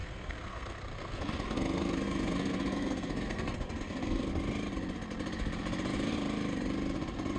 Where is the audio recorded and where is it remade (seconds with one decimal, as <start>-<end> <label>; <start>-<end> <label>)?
0.0-4.3 remade; 4.3-7.4 recorded